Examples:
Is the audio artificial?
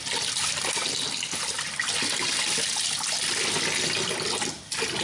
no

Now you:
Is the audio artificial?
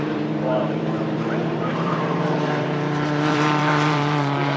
yes